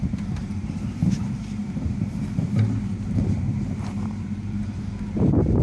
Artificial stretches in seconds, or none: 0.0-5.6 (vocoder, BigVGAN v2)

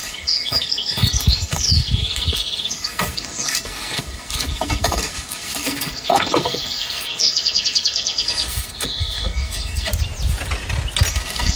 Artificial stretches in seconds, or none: 0.0-9.9 (codec, SNAC); 11.1-11.6

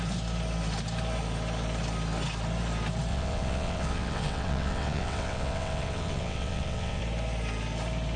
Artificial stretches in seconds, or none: 3.1-7.0 (vocoder, WaveNeXt)